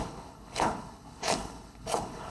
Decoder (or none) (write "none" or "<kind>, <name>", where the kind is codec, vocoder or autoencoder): codec, HILCodec